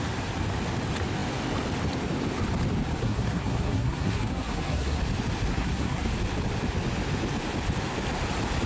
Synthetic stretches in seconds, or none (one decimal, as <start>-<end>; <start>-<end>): 3.0-5.0; 5.5-6.1